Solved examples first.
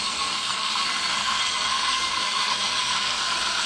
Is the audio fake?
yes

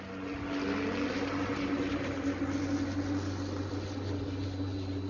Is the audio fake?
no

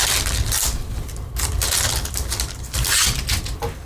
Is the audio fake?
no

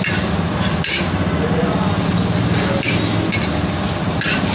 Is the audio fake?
no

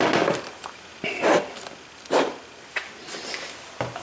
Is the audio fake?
no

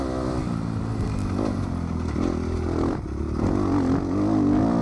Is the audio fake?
no